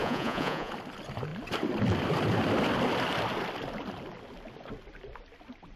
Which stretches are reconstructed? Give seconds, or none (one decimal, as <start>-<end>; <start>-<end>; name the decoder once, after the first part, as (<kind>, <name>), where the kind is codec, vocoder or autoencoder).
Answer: 0.0-0.7 (vocoder, Vocos)